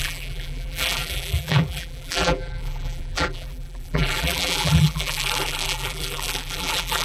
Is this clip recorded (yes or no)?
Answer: no